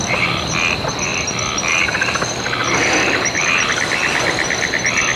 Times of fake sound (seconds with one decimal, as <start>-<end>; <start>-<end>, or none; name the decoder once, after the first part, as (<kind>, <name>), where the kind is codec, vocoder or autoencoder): none

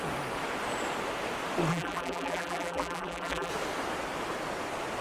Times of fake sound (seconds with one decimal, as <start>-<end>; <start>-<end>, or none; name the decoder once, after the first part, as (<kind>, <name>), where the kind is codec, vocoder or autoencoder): 1.7-3.5 (vocoder, BigVGAN v2)

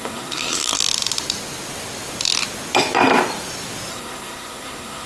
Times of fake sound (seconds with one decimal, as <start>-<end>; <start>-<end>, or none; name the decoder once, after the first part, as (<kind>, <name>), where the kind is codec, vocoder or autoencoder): 0.0-0.8 (codec, SNAC); 3.9-5.1

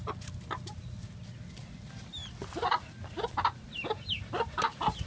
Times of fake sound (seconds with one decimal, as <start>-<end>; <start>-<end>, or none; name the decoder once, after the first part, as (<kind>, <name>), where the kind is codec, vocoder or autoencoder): none

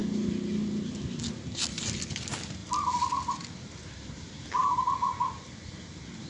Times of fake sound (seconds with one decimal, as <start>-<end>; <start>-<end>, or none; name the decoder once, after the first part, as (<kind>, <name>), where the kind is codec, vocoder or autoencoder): none

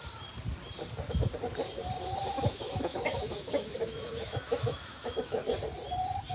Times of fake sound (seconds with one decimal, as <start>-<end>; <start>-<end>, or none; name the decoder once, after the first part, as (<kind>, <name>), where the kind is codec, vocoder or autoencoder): 2.3-5.4 (autoencoder, DAC-VAE)

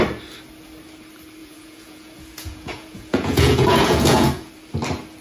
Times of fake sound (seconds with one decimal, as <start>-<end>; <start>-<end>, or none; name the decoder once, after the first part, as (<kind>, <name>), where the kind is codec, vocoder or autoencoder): 1.4-4.5 (vocoder, Vocos)

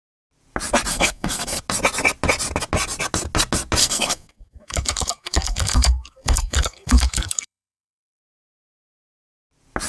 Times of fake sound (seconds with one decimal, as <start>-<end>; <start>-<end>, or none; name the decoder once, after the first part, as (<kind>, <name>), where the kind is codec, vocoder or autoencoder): 0.9-1.6 (codec, SNAC); 3.8-8.2